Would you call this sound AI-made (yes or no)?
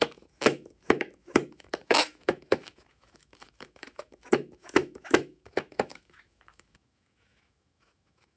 yes